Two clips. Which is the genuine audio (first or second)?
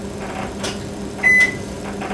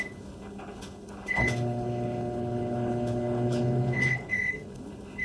first